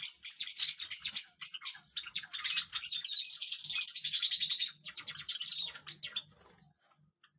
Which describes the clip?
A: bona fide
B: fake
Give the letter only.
A